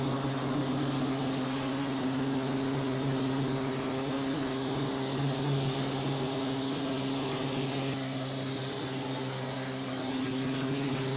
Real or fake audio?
real